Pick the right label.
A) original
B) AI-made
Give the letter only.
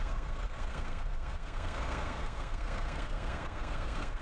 B